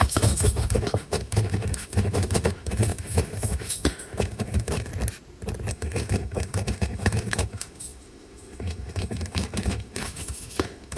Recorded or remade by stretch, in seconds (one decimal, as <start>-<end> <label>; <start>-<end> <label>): 0.0-4.9 remade; 4.9-5.7 recorded; 5.7-11.0 remade